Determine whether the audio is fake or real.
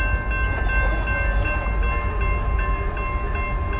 real